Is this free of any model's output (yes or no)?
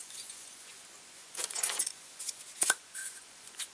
no